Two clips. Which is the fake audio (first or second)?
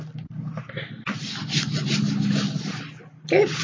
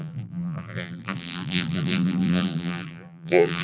second